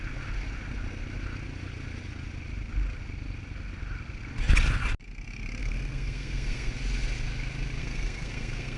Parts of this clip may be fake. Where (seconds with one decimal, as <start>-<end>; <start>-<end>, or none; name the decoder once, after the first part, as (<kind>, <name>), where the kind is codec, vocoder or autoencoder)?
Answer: 5.6-6.7 (codec, SNAC); 7.8-8.8